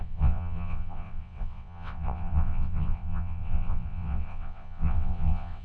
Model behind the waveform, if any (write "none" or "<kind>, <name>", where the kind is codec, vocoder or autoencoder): vocoder, WaveNeXt